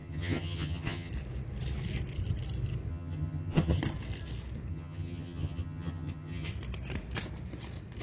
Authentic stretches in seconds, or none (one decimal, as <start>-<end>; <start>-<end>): 1.1-2.9; 3.8-4.7; 6.5-8.0